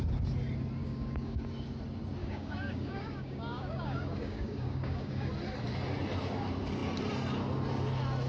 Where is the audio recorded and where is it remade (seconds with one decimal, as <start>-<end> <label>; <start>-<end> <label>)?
0.0-0.8 recorded; 0.8-1.4 remade; 1.4-2.2 recorded; 2.2-5.3 remade; 5.3-8.3 recorded

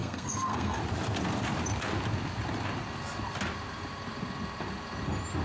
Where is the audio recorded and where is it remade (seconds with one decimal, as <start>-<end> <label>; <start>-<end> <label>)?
0.0-0.8 remade; 0.8-5.4 recorded

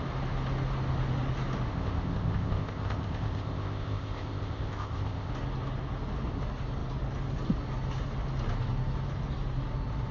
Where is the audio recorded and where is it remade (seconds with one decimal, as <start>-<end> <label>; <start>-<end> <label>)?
0.0-1.7 recorded; 1.7-5.3 remade; 5.3-10.1 recorded

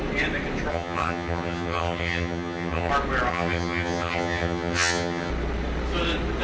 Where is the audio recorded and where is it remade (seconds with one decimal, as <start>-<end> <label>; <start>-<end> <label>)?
0.0-0.7 recorded; 0.7-2.9 remade; 2.9-3.3 recorded; 3.3-5.3 remade; 5.3-6.4 recorded

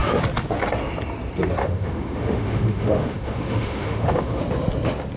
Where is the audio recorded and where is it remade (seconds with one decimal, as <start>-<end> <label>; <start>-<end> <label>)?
0.0-1.6 recorded; 1.6-4.4 remade; 4.4-5.2 recorded

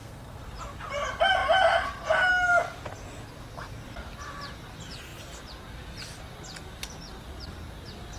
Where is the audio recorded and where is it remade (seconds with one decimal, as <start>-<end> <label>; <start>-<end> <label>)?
0.0-0.5 remade; 0.5-8.2 recorded

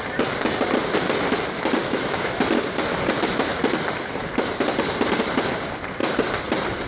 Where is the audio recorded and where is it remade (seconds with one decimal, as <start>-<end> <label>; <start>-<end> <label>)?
0.0-1.8 recorded; 1.8-2.4 remade; 2.4-6.9 recorded